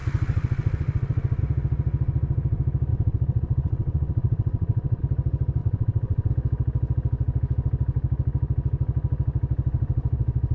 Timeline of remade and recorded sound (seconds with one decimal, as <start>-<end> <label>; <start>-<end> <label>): 0.0-1.4 remade; 1.4-2.9 recorded; 2.9-5.0 remade; 5.0-5.6 recorded; 5.6-6.3 remade; 6.3-10.5 recorded